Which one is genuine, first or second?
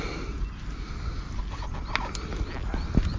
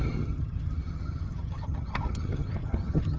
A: first